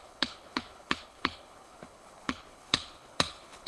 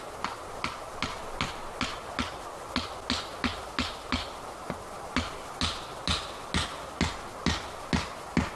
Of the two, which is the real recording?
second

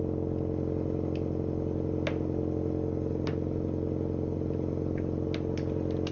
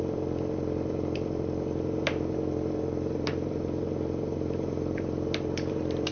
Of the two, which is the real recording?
first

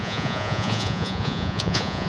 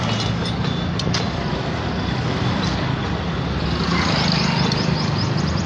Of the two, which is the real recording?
second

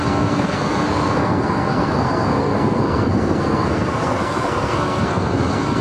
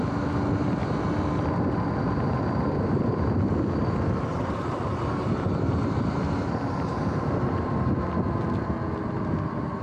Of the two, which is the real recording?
second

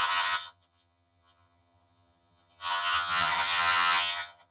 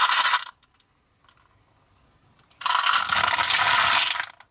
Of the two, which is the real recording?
second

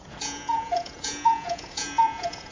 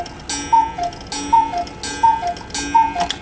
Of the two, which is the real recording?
second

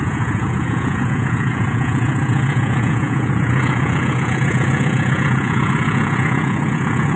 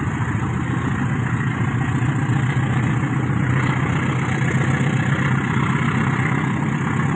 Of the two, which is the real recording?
second